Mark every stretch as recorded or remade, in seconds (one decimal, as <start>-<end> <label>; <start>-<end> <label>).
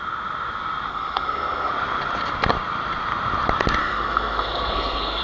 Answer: 0.0-0.9 recorded; 0.9-1.7 remade; 1.7-3.8 recorded; 3.8-5.2 remade